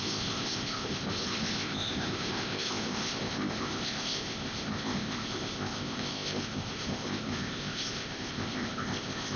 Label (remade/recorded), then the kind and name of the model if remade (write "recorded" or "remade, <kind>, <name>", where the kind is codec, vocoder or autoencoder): remade, codec, ZipCodec